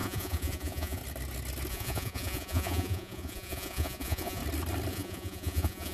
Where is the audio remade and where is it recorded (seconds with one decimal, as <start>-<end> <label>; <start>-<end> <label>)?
0.0-1.0 remade; 1.0-1.7 recorded; 1.7-4.4 remade; 4.4-4.9 recorded; 4.9-5.9 remade